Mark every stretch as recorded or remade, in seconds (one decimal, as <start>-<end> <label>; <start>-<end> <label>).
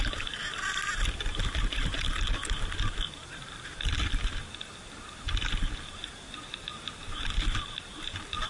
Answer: 0.0-8.5 recorded